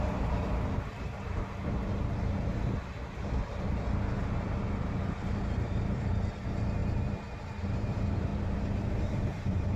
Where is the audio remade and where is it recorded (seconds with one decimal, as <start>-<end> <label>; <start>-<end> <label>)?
0.0-6.8 remade; 6.8-7.6 recorded; 7.6-8.3 remade; 8.3-9.1 recorded; 9.1-9.8 remade